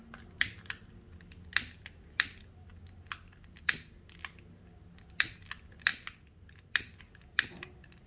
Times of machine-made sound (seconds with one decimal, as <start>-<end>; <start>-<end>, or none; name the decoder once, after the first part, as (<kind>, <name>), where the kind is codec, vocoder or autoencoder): none